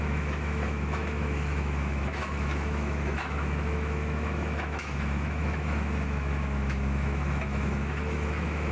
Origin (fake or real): fake